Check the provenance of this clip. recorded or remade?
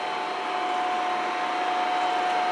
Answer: recorded